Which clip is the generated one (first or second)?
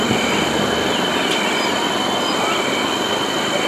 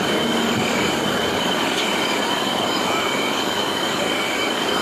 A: second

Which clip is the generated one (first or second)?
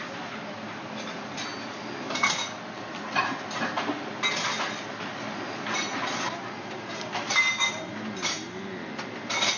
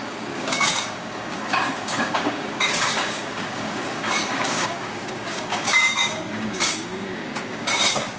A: second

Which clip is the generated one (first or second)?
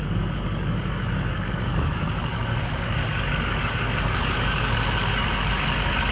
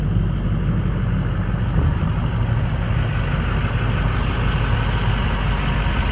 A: first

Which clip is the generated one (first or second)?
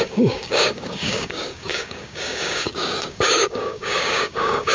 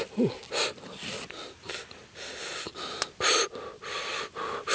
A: first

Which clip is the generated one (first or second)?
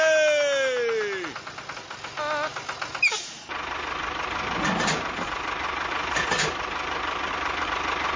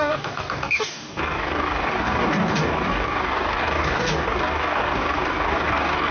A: second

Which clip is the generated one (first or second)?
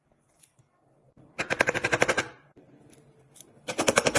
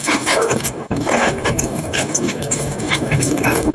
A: second